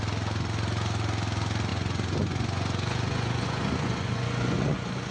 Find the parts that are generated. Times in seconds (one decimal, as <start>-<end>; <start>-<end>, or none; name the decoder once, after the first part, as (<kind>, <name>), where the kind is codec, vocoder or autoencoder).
1.7-5.1 (vocoder, Vocos)